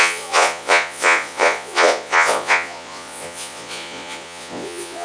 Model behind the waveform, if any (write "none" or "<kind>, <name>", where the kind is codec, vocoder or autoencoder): vocoder, Vocos